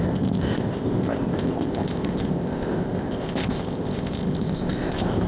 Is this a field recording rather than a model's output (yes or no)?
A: no